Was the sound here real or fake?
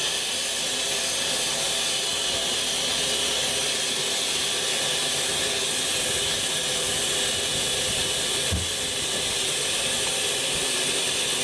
real